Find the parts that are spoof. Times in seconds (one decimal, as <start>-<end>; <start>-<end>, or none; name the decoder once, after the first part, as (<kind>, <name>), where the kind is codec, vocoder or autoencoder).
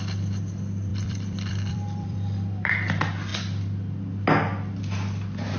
0.9-2.7 (vocoder, BigVGAN v2)